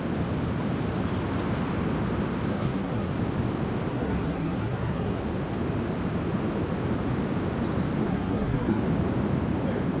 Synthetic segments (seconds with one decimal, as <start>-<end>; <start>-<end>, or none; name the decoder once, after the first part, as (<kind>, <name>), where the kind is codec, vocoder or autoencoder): 2.5-3.1 (codec, SNAC); 3.9-5.2; 8.1-8.8